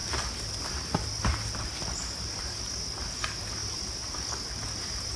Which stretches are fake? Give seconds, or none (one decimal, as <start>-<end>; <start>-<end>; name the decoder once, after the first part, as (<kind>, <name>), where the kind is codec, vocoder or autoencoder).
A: 3.6-4.5 (vocoder, BigVGAN v2)